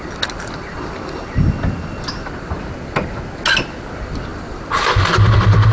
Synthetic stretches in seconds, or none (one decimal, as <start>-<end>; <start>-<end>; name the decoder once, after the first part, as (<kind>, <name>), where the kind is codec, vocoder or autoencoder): none